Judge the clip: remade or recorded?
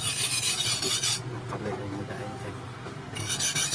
recorded